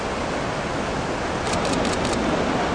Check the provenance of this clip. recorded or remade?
recorded